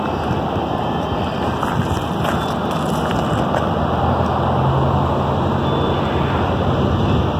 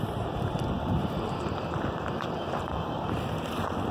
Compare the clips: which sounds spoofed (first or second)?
second